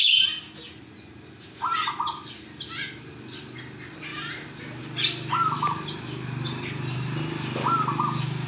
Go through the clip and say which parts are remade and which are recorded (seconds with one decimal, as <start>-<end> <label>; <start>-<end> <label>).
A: 0.0-8.5 recorded